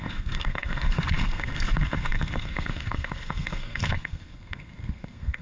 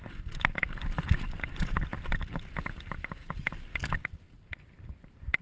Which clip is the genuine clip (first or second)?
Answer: second